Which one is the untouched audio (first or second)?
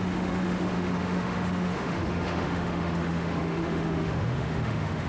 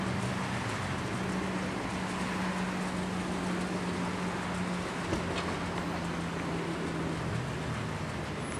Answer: second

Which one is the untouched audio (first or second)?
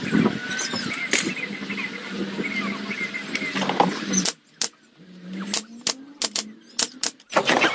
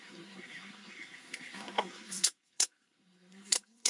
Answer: first